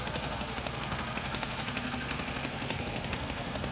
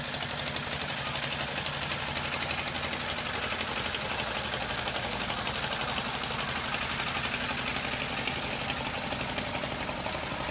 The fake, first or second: first